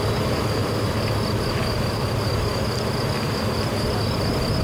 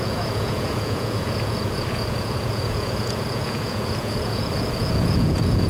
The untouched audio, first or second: first